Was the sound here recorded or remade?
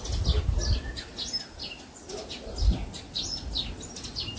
recorded